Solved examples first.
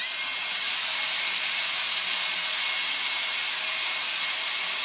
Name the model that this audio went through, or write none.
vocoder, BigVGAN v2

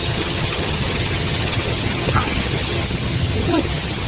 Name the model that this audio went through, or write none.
vocoder, HiFi-GAN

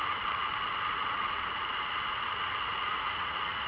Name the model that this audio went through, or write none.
vocoder, Vocos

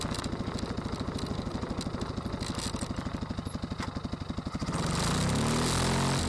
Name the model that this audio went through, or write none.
none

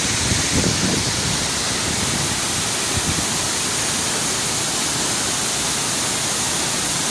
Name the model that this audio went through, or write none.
none